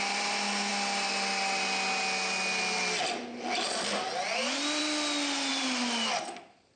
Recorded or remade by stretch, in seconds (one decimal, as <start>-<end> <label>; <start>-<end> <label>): 0.0-5.5 recorded; 5.5-6.8 remade